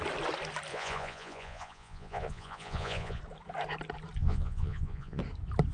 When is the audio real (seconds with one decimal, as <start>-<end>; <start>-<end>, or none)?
0.0-0.7; 3.2-4.2; 5.2-5.7

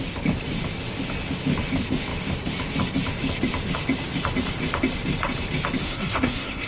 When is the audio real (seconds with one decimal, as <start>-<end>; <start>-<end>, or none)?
0.0-5.8

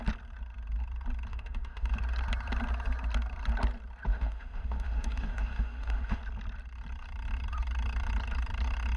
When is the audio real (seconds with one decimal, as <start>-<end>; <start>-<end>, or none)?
0.0-1.3; 1.9-4.1; 6.2-9.0

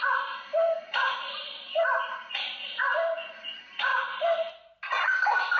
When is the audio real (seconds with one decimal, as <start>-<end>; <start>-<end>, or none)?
0.0-5.6

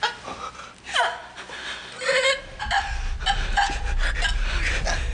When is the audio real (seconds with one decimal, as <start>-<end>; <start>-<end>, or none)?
0.0-5.1